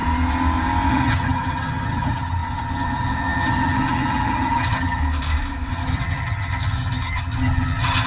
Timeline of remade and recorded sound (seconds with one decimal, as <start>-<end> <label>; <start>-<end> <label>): 0.0-0.9 recorded; 0.9-5.0 remade; 5.0-5.7 recorded; 5.7-8.1 remade